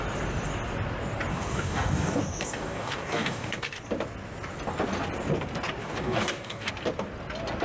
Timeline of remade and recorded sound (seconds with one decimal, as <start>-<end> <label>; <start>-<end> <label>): 0.0-1.3 recorded; 1.3-3.8 remade; 3.8-5.8 recorded; 5.8-6.7 remade; 6.7-7.6 recorded